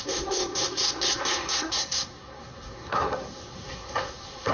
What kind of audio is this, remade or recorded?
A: remade